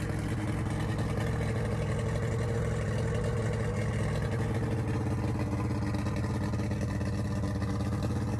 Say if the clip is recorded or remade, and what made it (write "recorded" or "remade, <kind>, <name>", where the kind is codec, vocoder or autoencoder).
recorded